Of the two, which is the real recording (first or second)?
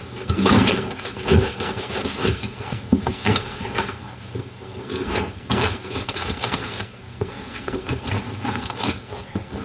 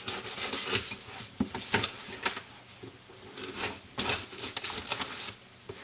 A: second